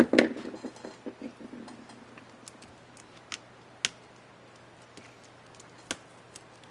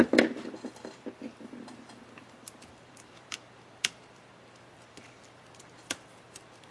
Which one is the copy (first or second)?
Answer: second